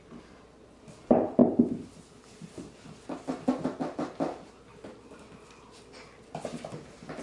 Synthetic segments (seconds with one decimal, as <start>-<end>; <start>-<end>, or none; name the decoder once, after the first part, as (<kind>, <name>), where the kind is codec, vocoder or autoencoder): none